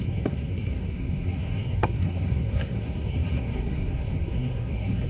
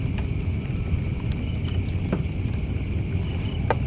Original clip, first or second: second